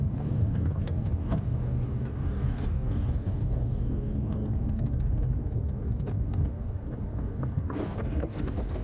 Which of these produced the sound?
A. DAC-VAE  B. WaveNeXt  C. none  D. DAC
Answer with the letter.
D